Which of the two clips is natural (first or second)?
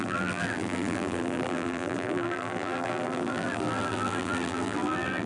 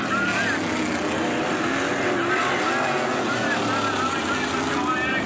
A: second